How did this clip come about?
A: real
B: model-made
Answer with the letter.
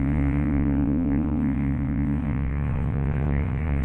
B